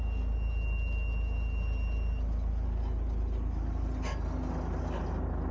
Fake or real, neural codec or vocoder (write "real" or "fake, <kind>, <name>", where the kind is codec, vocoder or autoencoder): real